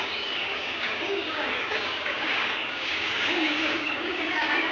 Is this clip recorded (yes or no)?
no